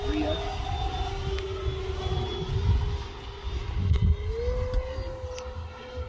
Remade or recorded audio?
recorded